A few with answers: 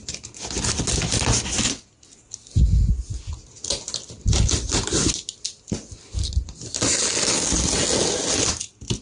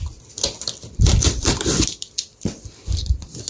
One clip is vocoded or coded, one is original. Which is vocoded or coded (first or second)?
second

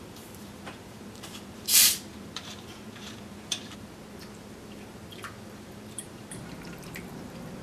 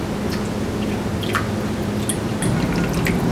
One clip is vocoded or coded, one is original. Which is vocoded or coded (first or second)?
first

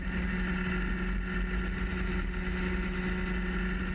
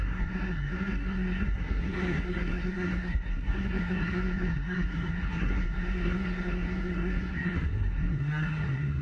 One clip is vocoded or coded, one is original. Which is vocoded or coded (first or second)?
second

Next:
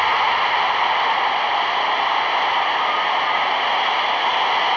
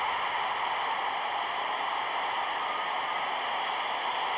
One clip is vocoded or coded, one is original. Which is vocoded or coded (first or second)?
second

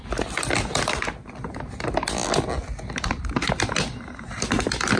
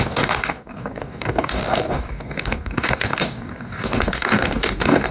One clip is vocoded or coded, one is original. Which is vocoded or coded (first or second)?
second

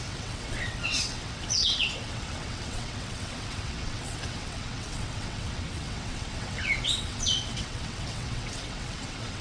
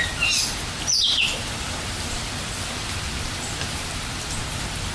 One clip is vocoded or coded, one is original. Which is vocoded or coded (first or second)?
first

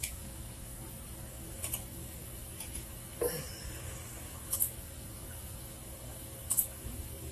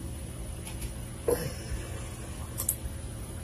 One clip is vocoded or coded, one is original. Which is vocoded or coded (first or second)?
first